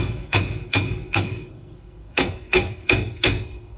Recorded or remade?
remade